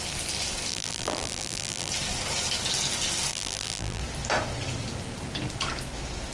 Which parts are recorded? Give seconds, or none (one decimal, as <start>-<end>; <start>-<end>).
0.0-0.7; 1.9-3.3; 4.0-6.3